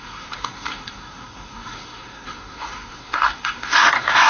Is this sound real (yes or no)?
no